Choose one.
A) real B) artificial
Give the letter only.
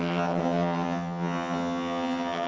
B